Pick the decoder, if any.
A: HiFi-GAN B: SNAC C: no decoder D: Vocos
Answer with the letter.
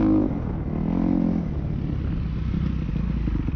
C